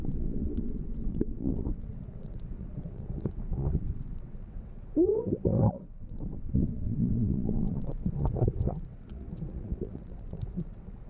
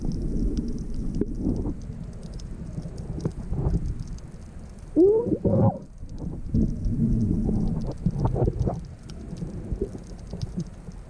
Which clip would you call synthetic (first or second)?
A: first